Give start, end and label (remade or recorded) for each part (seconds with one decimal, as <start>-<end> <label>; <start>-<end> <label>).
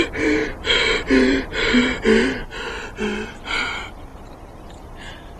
0.0-0.4 remade; 0.4-3.6 recorded; 3.6-4.1 remade; 4.1-5.4 recorded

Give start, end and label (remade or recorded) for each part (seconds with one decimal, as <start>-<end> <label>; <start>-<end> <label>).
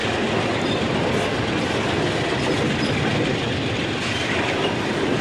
0.0-1.0 remade; 1.0-4.2 recorded; 4.2-5.2 remade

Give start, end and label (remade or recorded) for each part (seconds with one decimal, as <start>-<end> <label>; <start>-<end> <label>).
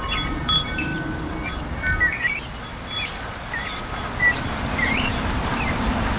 0.0-0.9 remade; 0.9-4.6 recorded; 4.6-6.2 remade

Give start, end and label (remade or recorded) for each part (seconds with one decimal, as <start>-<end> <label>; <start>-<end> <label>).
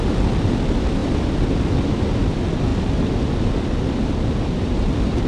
0.0-2.7 remade; 2.7-3.4 recorded; 3.4-5.3 remade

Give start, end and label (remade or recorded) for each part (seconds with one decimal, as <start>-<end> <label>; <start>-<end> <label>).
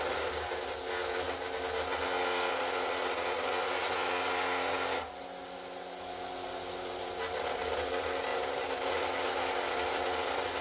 0.0-8.3 recorded; 8.3-10.6 remade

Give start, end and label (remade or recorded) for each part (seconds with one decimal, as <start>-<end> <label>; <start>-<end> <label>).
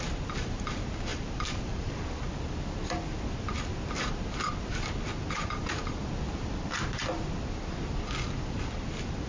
0.0-1.1 recorded; 1.1-2.3 remade; 2.3-9.3 recorded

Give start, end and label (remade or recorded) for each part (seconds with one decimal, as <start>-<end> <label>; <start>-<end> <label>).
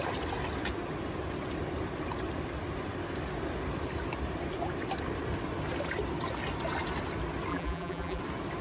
0.0-7.5 recorded; 7.5-8.2 remade; 8.2-8.6 recorded